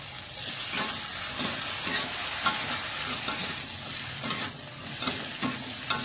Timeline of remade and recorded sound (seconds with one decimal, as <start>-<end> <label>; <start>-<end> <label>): 0.0-6.0 recorded